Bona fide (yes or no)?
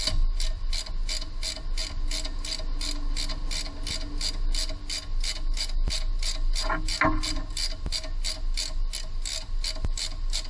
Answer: yes